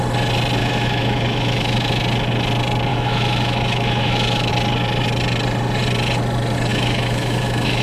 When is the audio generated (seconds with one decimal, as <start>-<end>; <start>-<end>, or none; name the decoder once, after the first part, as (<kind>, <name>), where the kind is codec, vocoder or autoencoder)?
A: 0.6-2.0 (autoencoder, DAC-VAE); 2.9-4.5; 6.7-7.8